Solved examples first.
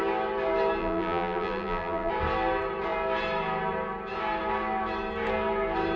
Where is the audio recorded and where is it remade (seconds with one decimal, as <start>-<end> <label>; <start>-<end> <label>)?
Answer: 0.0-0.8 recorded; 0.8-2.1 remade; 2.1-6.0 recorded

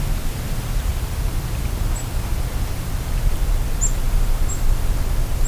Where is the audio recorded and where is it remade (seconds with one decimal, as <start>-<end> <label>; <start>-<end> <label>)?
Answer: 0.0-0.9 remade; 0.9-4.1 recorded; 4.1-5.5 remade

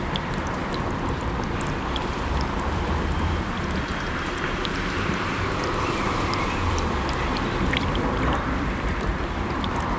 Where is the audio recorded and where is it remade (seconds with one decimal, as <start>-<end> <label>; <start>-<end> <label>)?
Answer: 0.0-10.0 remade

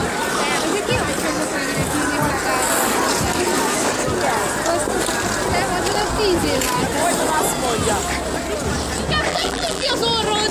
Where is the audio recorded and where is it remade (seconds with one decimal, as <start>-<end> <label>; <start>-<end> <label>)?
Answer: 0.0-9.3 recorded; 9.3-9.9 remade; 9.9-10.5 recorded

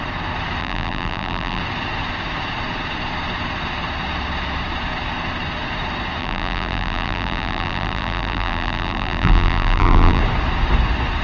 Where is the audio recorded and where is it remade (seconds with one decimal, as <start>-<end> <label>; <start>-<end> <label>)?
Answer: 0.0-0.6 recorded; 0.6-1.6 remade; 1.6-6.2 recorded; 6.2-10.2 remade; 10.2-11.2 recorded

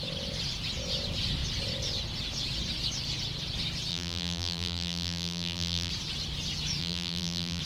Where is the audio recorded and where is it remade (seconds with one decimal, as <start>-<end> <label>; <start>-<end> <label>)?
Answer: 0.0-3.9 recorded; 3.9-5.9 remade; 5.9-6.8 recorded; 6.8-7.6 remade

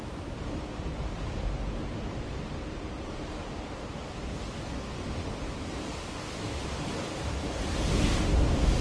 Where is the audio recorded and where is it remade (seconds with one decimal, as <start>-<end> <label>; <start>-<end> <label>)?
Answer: 0.0-4.1 remade; 4.1-6.6 recorded; 6.6-7.6 remade; 7.6-8.8 recorded